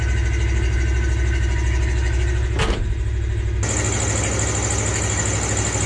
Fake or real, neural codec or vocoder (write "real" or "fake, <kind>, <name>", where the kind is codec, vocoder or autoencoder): real